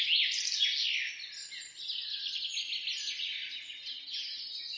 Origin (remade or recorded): recorded